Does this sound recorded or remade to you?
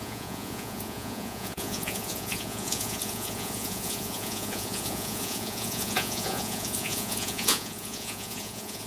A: remade